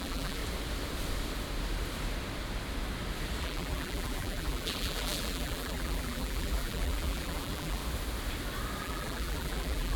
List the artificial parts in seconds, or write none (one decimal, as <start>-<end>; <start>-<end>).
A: 0.0-0.4; 3.4-7.8; 8.8-10.0